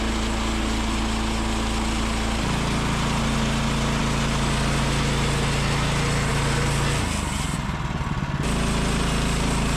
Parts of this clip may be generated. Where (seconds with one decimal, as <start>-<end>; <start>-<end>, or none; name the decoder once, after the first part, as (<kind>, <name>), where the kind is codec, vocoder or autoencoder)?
none